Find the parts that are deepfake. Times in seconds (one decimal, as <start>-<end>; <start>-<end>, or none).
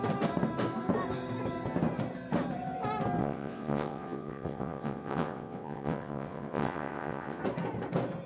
3.2-7.4